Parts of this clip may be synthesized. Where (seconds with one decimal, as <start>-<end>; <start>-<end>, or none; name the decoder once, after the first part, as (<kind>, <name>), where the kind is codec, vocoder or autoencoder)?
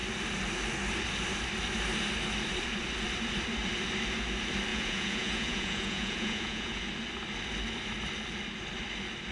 4.7-6.8 (vocoder, Vocos)